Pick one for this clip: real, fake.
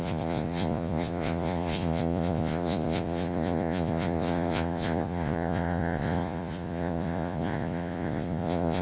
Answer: fake